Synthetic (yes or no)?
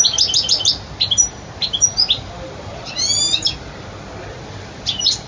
no